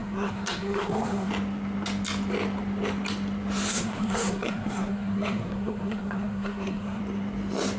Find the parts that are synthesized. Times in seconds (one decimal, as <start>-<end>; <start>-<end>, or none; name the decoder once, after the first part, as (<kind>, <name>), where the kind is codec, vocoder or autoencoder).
0.0-1.3 (codec, SNAC); 3.7-7.0